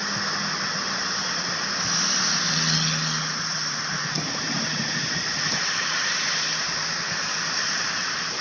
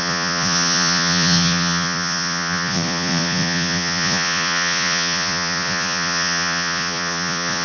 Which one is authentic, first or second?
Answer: first